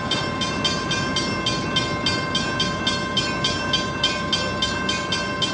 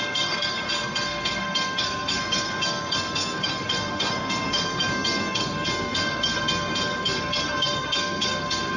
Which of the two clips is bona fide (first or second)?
first